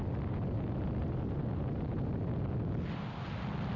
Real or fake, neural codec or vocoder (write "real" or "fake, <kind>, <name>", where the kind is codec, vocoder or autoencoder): real